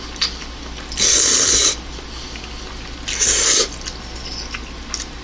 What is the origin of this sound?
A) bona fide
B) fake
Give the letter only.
A